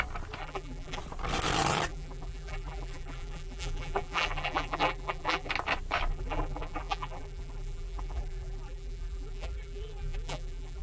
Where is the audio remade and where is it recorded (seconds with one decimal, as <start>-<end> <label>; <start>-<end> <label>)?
0.0-0.4 recorded; 0.4-1.0 remade; 1.0-1.9 recorded; 1.9-5.5 remade; 5.5-6.1 recorded; 6.1-10.8 remade